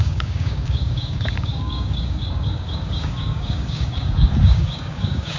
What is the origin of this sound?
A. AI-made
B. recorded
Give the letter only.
A